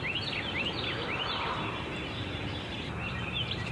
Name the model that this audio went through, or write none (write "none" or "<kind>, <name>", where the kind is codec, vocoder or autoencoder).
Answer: vocoder, BigVGAN v2